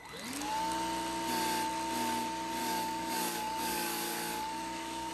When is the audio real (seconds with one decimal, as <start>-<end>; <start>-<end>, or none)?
0.0-2.6